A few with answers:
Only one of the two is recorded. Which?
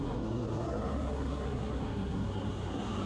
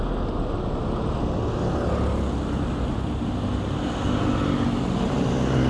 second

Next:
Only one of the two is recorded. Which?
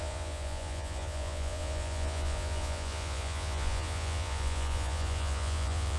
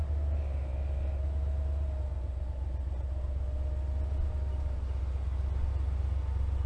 second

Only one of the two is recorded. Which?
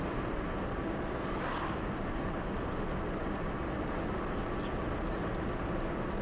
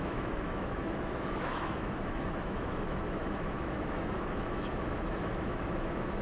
first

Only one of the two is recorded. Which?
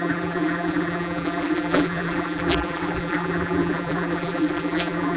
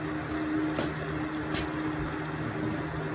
second